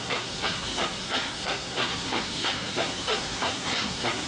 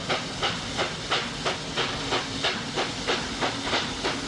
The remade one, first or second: first